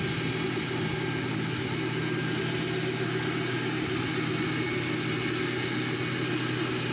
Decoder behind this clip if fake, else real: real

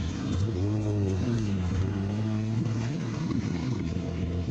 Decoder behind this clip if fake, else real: fake, codec, SNAC